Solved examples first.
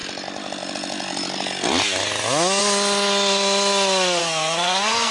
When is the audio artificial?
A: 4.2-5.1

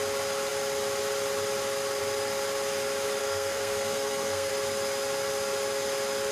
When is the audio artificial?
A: 3.2-4.5

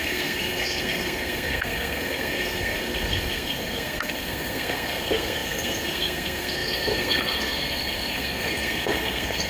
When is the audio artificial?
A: 0.0-9.5

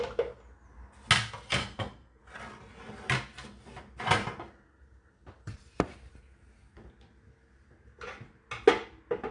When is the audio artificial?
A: 1.6-2.2

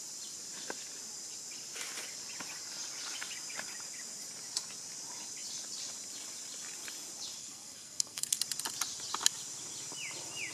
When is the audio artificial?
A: 7.4-8.4

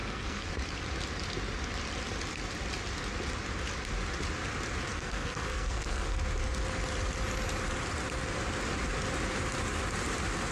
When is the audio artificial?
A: 0.0-0.5; 4.9-6.2

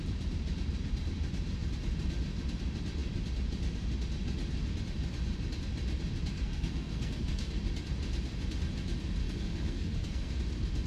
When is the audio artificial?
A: 6.3-7.5; 9.2-10.4

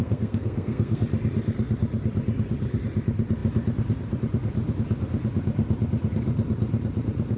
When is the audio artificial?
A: 0.0-1.0